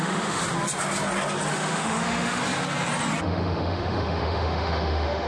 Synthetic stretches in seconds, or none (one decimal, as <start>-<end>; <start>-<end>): 0.0-0.4; 1.5-2.4; 3.2-5.3